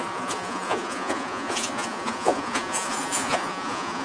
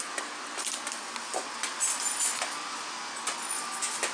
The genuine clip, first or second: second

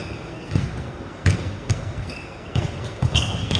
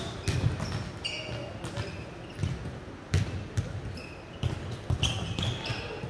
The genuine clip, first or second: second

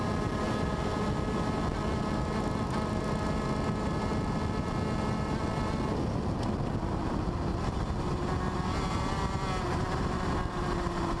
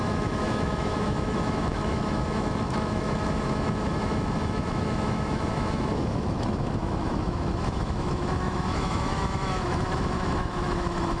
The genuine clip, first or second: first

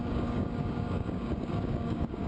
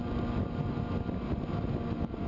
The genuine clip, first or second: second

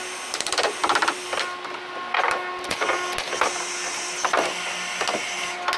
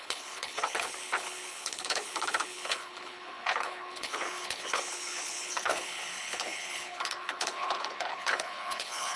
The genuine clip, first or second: first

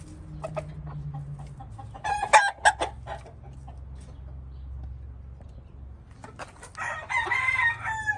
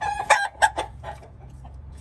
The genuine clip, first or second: first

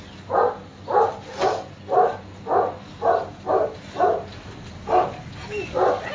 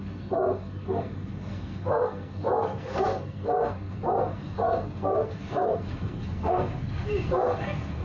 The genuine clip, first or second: first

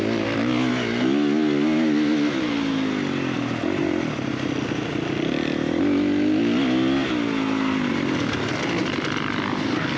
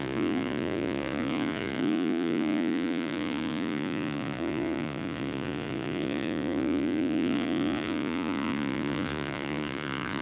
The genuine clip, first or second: first